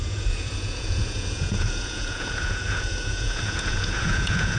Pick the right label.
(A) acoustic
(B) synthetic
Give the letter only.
B